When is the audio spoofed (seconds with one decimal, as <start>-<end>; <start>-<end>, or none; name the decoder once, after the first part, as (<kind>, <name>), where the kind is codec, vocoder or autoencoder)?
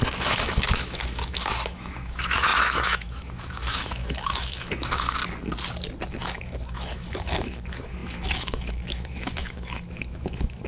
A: 0.0-5.2 (autoencoder, DAC-VAE); 6.1-10.7